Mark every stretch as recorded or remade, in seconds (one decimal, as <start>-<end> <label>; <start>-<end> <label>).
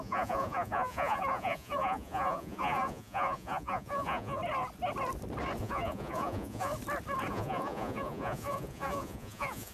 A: 0.0-4.4 remade; 4.4-5.6 recorded; 5.6-6.7 remade; 6.7-7.3 recorded; 7.3-9.7 remade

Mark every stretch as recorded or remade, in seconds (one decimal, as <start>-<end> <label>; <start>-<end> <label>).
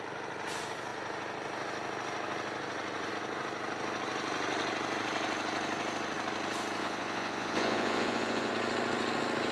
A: 0.0-6.8 recorded; 6.8-8.5 remade; 8.5-9.5 recorded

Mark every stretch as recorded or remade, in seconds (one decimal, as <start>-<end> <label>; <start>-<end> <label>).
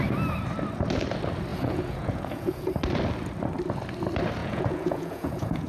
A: 0.0-1.5 recorded; 1.5-2.7 remade; 2.7-4.4 recorded; 4.4-5.7 remade